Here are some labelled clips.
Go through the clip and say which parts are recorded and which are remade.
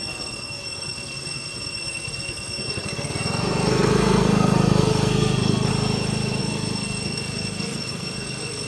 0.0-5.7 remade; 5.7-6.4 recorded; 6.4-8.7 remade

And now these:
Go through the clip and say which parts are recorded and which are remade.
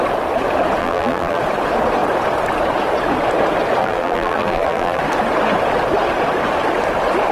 0.0-0.8 recorded; 0.8-1.4 remade; 1.4-3.8 recorded; 3.8-5.0 remade; 5.0-7.3 recorded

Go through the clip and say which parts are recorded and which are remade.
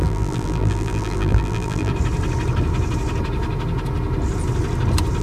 0.0-1.9 remade; 1.9-5.2 recorded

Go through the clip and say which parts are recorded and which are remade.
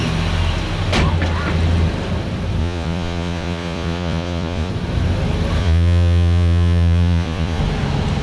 0.0-2.6 recorded; 2.6-4.7 remade; 4.7-5.6 recorded; 5.6-7.6 remade; 7.6-8.2 recorded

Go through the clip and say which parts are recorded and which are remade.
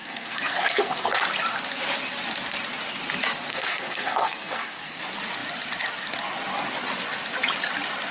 0.0-1.2 remade; 1.2-3.5 recorded; 3.5-5.0 remade; 5.0-8.1 recorded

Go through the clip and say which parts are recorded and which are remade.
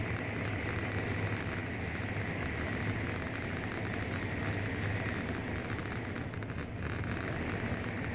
0.0-8.1 recorded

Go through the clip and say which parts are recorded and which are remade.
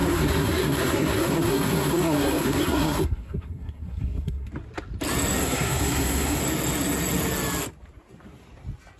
0.0-4.5 remade; 4.5-5.4 recorded; 5.4-6.4 remade; 6.4-9.0 recorded